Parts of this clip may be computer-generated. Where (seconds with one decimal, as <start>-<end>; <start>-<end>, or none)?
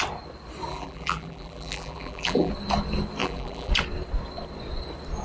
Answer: 0.7-2.5; 3.2-3.7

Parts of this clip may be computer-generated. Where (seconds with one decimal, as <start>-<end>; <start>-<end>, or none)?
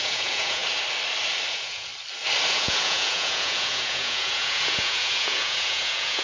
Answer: 0.0-0.6; 1.5-1.9; 2.5-6.2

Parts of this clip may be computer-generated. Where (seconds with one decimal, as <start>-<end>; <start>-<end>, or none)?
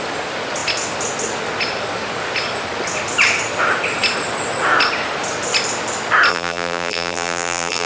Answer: 6.3-7.9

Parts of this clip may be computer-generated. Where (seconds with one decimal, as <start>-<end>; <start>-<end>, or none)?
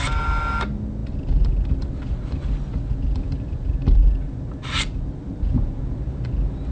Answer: none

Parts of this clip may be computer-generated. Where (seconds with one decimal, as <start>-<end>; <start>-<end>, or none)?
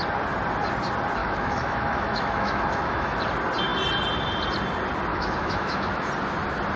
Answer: 1.2-3.2; 5.1-6.1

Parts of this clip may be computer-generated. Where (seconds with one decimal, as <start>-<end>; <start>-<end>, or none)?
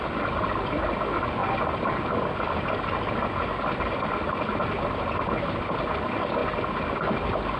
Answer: none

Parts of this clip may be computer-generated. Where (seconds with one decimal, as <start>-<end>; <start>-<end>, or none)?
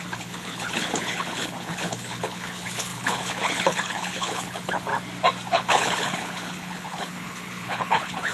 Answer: 0.0-4.9; 5.5-8.3